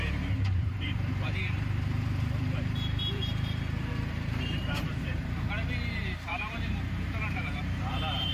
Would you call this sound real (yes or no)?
no